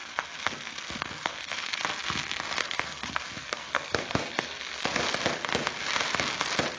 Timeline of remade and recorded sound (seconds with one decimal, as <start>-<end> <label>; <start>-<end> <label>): 0.0-1.8 remade; 1.8-2.6 recorded; 2.6-5.0 remade; 5.0-6.8 recorded